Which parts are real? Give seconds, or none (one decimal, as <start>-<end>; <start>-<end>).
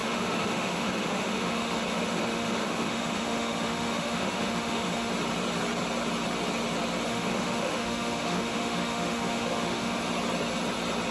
5.1-7.1; 10.0-11.1